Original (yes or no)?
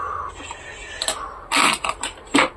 yes